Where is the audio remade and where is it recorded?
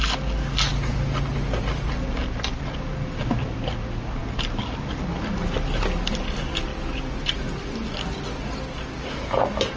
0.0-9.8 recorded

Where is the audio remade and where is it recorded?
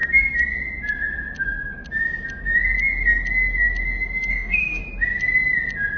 0.0-4.3 recorded; 4.3-4.8 remade; 4.8-6.0 recorded